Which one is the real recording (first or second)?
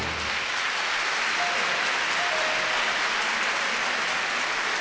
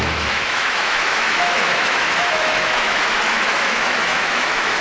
first